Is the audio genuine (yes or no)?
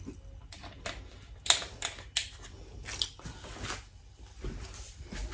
yes